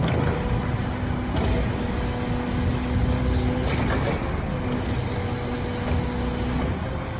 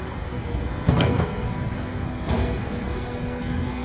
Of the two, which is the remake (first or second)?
second